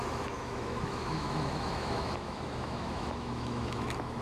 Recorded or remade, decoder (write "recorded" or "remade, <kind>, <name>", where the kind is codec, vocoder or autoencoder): remade, autoencoder, DAC-VAE